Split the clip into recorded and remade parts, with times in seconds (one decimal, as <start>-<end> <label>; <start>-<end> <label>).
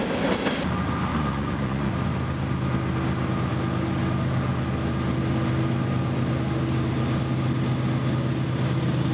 0.0-1.1 recorded; 1.1-1.9 remade; 1.9-9.1 recorded